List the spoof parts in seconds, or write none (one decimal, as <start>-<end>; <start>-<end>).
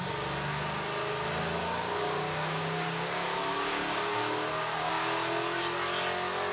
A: 1.6-4.9